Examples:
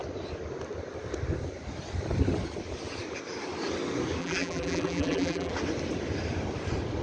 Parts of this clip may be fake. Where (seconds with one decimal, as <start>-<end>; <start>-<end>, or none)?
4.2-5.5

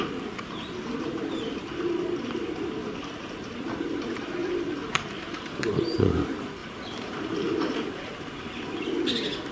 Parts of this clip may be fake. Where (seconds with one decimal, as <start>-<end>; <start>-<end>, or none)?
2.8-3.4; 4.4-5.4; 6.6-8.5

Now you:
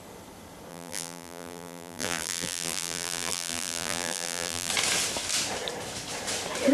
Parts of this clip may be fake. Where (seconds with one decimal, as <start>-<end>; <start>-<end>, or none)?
0.7-4.7

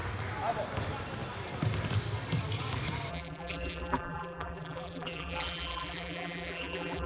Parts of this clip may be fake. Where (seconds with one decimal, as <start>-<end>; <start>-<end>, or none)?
3.1-7.1

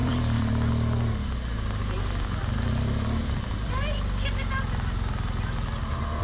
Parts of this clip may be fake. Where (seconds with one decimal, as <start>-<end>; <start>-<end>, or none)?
0.0-0.7

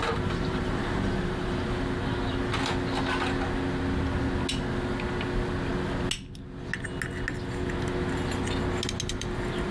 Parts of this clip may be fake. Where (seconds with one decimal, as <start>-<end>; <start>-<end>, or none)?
0.0-1.6